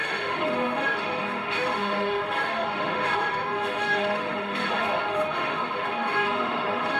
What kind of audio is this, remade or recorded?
remade